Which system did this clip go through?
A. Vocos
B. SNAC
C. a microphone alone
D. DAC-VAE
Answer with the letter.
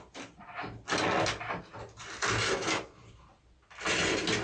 C